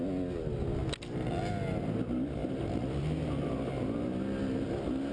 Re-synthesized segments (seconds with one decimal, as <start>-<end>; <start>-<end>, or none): none

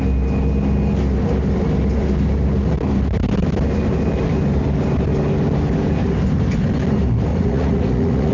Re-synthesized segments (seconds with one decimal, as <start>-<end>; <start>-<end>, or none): 7.3-8.3

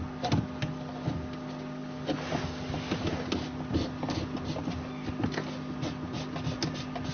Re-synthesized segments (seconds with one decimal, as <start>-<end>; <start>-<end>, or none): none

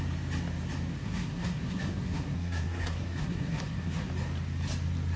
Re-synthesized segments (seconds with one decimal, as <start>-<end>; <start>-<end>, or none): 1.0-4.1

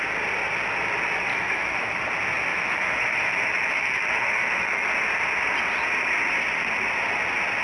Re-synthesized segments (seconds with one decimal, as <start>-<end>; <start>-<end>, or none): 1.3-2.0; 2.5-4.8

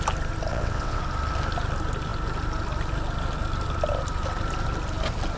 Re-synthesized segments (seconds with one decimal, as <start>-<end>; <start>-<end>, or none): 0.5-1.0